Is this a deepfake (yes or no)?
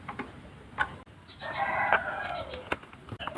no